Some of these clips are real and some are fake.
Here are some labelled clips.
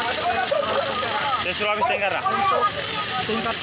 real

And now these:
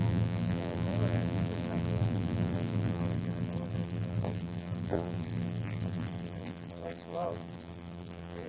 fake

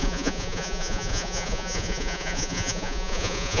fake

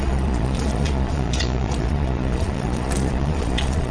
fake